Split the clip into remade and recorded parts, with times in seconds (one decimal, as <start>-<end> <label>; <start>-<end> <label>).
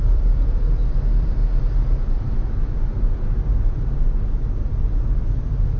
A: 0.0-1.4 remade; 1.4-4.6 recorded; 4.6-5.8 remade